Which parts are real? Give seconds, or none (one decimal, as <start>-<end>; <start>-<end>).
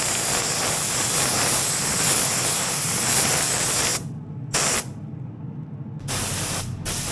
0.0-7.1